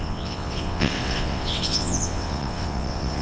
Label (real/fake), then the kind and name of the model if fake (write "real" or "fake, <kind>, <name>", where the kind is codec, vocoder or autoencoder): fake, vocoder, WaveNeXt